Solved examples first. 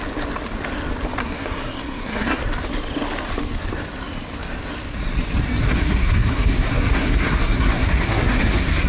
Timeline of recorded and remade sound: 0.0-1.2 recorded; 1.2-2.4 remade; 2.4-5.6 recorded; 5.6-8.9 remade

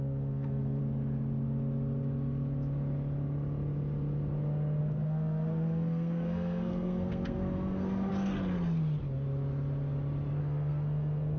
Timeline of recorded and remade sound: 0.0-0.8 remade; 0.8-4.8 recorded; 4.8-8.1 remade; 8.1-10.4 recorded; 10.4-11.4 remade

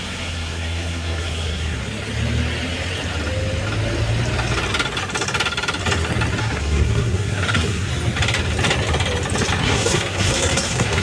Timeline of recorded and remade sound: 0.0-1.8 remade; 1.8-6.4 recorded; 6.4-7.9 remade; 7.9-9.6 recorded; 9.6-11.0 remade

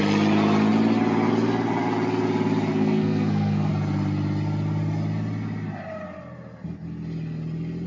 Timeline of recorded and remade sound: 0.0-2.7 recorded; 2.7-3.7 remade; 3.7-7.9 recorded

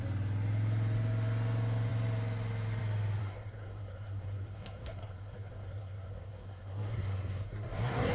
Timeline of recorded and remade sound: 0.0-3.2 recorded; 3.2-8.1 remade

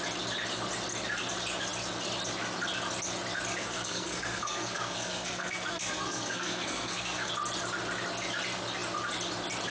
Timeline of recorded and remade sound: 0.0-3.5 recorded; 3.5-7.3 remade; 7.3-9.7 recorded